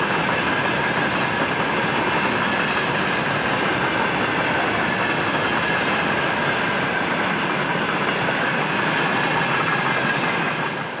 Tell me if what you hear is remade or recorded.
recorded